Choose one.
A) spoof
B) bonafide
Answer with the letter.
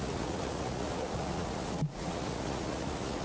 A